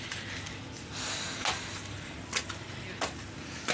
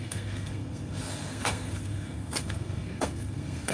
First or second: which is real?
first